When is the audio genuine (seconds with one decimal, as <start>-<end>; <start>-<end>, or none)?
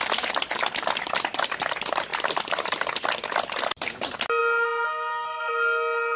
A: 0.0-6.2